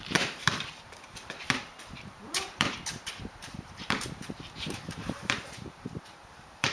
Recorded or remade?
remade